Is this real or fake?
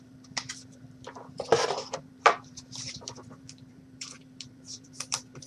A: fake